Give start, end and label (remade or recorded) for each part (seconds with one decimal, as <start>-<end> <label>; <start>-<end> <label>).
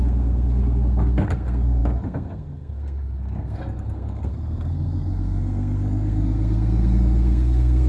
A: 0.0-7.9 remade